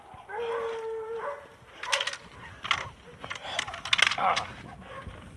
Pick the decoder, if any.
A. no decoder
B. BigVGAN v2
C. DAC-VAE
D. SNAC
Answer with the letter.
A